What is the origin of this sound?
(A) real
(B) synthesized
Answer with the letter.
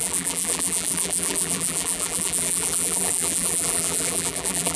B